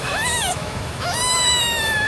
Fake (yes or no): yes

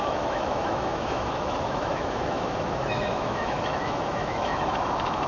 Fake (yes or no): yes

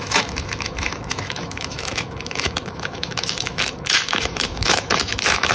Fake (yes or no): yes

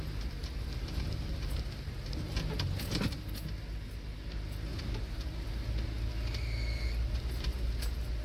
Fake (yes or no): no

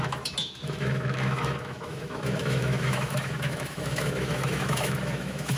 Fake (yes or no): yes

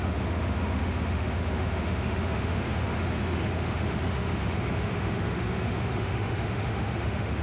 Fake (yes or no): yes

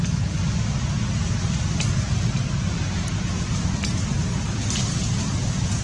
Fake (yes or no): no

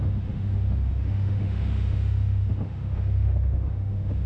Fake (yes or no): yes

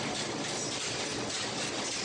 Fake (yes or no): no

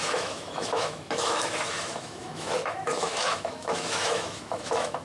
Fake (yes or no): yes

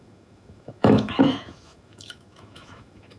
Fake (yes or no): yes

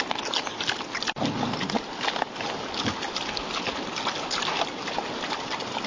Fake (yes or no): no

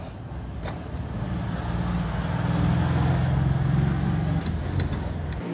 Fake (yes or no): no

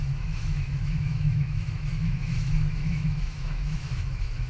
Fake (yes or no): yes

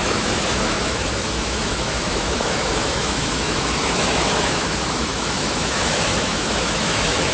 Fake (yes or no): yes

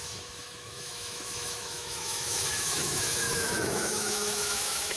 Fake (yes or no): yes